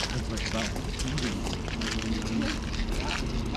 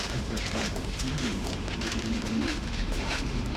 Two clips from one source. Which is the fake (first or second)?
second